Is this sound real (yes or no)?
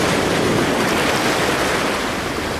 yes